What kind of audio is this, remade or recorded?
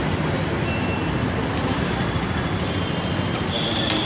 recorded